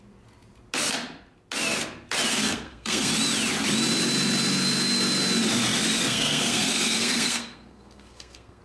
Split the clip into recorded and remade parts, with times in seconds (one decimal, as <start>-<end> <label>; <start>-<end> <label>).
0.0-2.3 recorded; 2.3-3.1 remade; 3.1-6.0 recorded; 6.0-8.6 remade